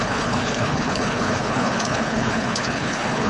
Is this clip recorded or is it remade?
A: remade